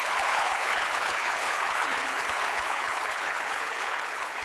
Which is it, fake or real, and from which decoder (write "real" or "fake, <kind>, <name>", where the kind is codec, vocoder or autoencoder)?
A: fake, codec, HILCodec